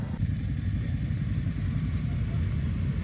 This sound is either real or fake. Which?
real